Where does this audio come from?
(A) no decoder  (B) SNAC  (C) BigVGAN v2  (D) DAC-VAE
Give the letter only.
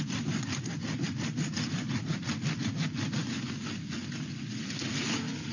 A